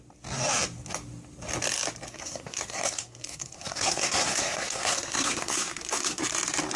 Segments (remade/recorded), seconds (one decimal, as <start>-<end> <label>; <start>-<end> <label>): 0.0-2.1 recorded; 2.1-6.2 remade; 6.2-6.8 recorded